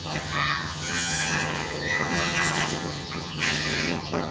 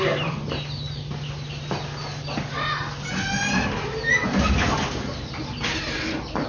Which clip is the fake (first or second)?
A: first